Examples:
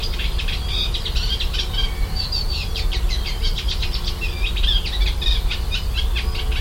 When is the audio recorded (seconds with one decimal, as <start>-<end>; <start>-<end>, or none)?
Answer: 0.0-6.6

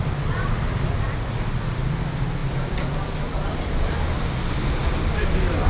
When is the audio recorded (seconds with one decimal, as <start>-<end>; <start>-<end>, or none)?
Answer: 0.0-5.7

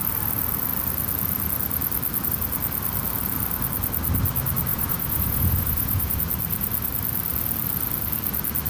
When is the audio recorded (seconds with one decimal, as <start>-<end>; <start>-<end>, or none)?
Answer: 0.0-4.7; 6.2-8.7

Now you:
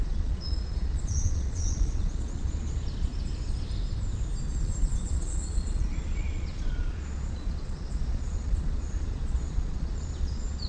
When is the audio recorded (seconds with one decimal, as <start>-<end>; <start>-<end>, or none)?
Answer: 3.1-4.4

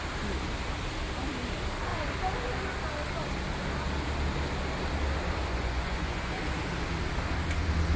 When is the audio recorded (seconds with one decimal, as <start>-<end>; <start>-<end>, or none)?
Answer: 0.0-5.5; 6.3-8.0

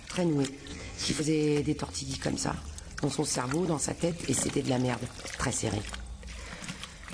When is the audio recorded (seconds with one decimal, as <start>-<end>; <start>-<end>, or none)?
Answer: 0.0-0.7; 1.2-7.1

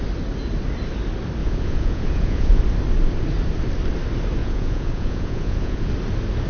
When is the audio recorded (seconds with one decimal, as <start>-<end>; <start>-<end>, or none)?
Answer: 0.0-1.4; 2.6-4.4; 5.9-6.5